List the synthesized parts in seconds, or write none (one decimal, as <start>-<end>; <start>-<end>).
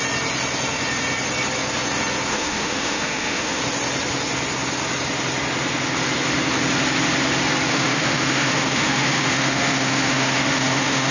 2.3-3.6; 7.7-11.1